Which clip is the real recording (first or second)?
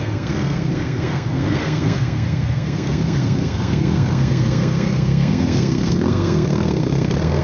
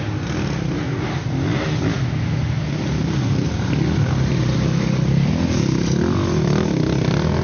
second